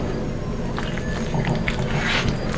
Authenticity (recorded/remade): recorded